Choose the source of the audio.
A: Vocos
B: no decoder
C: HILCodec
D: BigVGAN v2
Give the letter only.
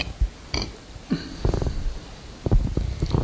B